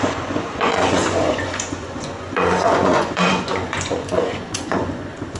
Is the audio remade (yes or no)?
yes